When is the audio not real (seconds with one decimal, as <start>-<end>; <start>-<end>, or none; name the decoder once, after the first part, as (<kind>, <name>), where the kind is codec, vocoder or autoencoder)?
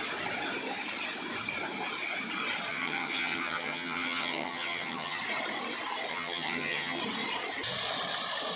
2.7-5.2 (vocoder, HiFi-GAN); 6.1-7.0